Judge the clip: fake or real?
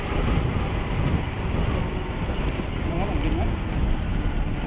real